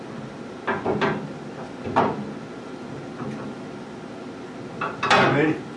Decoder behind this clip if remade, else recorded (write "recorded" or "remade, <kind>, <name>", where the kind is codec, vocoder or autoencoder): recorded